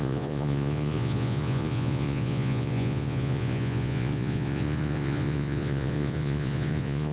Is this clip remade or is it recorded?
remade